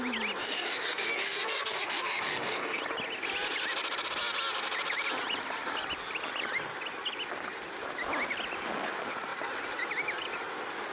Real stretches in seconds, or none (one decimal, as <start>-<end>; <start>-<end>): 0.0-0.4; 2.8-10.9